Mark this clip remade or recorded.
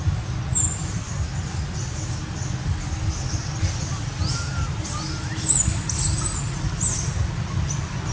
recorded